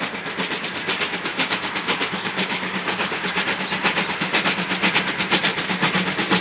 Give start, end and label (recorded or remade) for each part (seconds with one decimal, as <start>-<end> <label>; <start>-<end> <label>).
0.0-1.3 recorded; 1.3-3.4 remade; 3.4-6.4 recorded